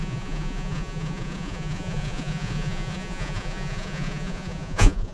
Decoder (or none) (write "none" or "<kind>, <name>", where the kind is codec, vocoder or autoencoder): vocoder, Vocos